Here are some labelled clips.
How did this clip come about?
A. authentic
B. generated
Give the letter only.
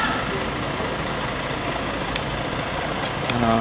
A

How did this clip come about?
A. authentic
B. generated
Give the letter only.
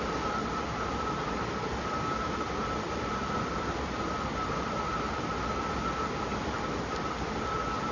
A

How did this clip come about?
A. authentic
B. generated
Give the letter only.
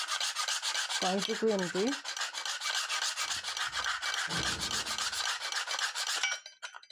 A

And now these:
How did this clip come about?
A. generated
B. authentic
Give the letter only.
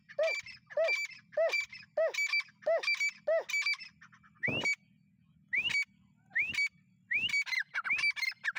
B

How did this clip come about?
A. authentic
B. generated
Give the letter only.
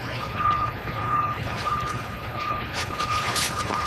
B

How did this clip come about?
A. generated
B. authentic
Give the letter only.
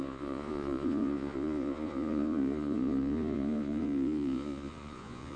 A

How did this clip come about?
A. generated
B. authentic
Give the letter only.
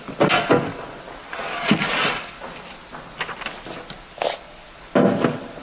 B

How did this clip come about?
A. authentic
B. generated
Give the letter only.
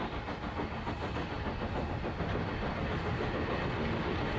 A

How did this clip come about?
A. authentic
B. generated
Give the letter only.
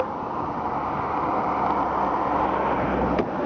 A